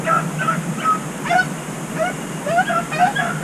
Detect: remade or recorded recorded